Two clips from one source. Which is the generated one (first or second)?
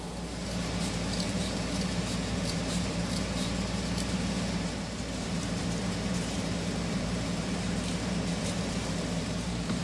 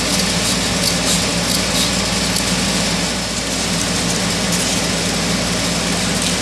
first